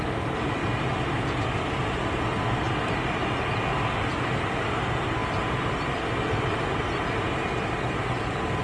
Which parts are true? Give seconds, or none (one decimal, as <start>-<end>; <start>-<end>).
0.0-8.6